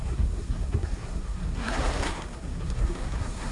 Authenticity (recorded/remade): remade